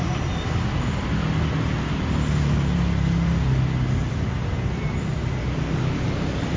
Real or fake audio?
real